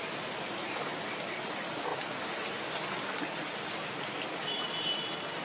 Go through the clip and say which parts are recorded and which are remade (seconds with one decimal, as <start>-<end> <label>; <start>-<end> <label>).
0.0-5.4 recorded